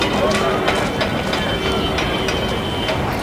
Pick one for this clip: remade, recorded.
recorded